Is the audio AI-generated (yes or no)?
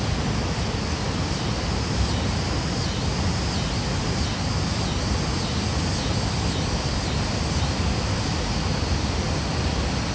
no